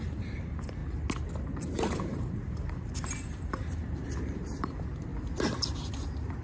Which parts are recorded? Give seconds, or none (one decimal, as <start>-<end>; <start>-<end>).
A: 0.8-1.4; 5.1-6.4

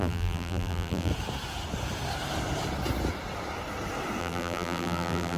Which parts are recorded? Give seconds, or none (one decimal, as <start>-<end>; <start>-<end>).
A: 1.1-4.2

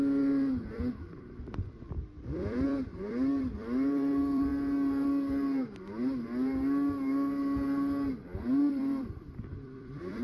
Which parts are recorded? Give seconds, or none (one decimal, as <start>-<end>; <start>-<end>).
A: 4.5-8.7

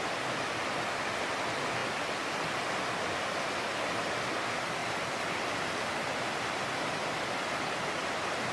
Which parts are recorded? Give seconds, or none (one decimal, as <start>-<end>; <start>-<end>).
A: 0.0-8.5